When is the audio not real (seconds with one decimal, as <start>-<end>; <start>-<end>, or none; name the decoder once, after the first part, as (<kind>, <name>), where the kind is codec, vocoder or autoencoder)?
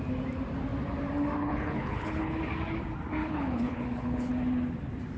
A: 1.4-2.4 (codec, HILCodec); 3.2-4.3